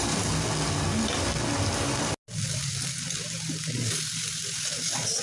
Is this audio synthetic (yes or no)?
no